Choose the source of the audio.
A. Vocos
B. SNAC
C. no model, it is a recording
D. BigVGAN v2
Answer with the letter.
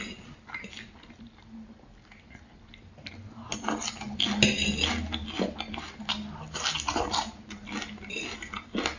C